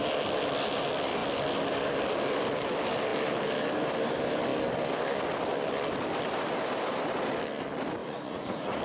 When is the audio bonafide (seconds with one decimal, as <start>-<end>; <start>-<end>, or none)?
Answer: 0.0-8.0